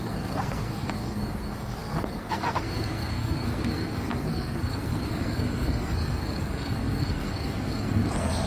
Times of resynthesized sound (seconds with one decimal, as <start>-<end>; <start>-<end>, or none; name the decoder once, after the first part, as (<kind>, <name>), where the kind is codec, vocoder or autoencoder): 0.0-8.5 (codec, SNAC)